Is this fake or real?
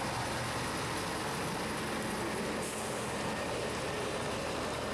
real